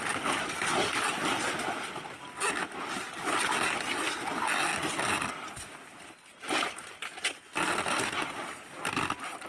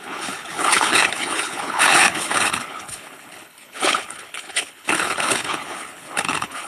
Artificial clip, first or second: second